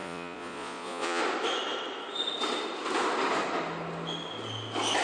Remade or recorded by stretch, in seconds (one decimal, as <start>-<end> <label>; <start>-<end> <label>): 0.0-1.2 remade; 1.2-5.0 recorded